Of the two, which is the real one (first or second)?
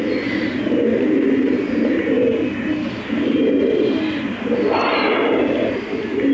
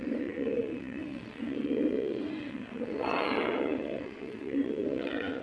first